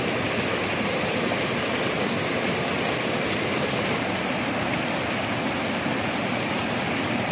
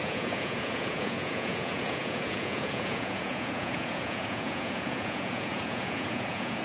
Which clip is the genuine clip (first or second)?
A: first